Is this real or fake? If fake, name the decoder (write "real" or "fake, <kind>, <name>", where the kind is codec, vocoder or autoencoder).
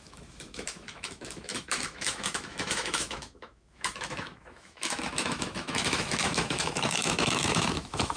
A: fake, autoencoder, DAC-VAE